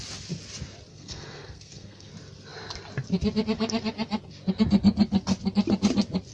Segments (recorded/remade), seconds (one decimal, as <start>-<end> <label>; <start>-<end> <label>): 0.0-0.9 recorded; 0.9-2.1 remade; 2.1-6.3 recorded